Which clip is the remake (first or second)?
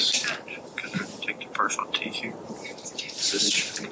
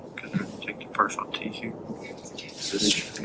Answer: first